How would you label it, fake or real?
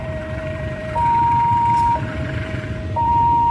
fake